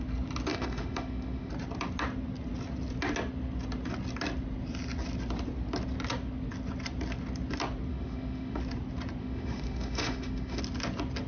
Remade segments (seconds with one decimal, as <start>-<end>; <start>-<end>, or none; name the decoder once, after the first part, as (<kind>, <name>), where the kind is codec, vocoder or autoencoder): 0.5-1.5 (autoencoder, DAC-VAE); 7.9-8.6; 9.2-10.6